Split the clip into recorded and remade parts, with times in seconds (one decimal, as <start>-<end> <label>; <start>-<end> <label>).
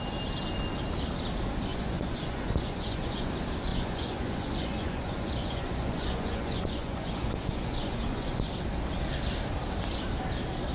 0.0-1.7 recorded; 1.7-3.3 remade; 3.3-3.7 recorded; 3.7-8.5 remade; 8.5-10.7 recorded